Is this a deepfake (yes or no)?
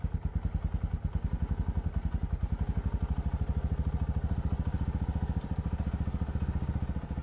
no